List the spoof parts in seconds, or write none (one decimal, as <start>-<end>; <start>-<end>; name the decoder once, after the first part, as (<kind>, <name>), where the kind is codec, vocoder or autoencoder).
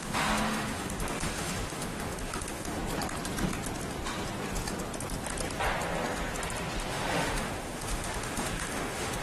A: 0.0-2.8 (autoencoder, DAC-VAE); 6.9-9.2